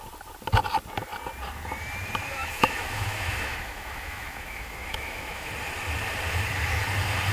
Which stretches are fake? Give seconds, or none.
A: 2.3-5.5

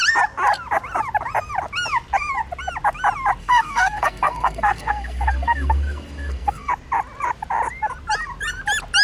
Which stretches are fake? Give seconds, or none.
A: 3.4-6.7

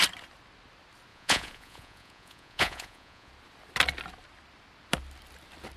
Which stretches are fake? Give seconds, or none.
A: 1.1-3.3

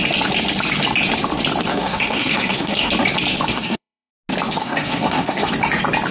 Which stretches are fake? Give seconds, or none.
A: 1.7-2.9; 3.5-4.1; 4.6-5.5

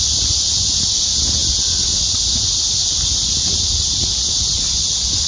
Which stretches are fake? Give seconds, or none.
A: none

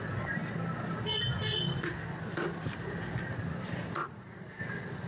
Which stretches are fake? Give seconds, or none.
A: 4.0-4.6

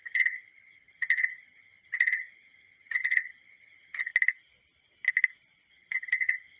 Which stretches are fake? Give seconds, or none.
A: 0.0-4.1; 5.7-6.6